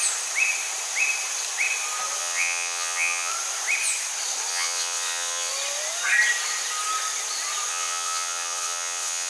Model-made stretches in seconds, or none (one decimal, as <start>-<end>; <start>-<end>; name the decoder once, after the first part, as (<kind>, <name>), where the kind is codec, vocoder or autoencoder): 2.2-3.3 (vocoder, WaveNeXt); 4.5-5.5; 7.7-9.3